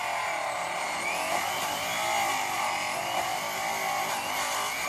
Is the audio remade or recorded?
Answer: recorded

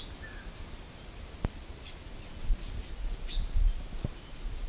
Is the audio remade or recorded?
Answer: recorded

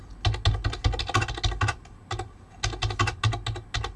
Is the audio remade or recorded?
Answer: recorded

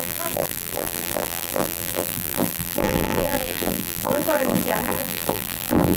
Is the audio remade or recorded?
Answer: remade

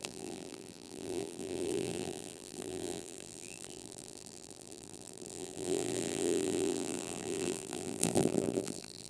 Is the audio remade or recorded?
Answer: remade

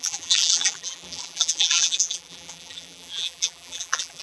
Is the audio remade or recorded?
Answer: remade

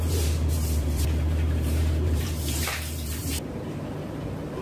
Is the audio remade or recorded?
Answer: remade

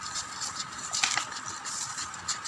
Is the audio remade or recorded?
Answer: recorded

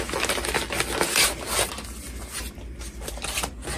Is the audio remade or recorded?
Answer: recorded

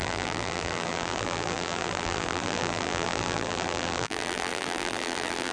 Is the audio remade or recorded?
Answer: remade